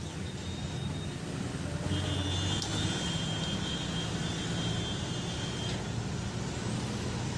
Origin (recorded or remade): recorded